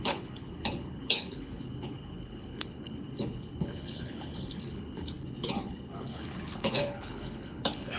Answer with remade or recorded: remade